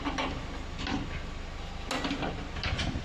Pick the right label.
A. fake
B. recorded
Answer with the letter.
B